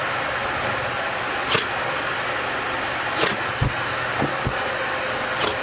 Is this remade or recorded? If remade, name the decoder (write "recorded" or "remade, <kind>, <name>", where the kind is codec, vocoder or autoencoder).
recorded